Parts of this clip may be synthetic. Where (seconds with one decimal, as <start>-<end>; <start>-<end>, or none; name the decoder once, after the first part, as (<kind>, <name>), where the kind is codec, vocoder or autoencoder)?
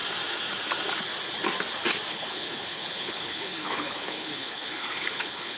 2.1-5.6 (codec, HILCodec)